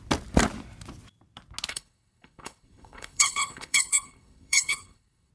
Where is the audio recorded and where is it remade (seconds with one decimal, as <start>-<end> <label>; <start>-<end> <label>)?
0.0-1.7 recorded; 1.7-5.3 remade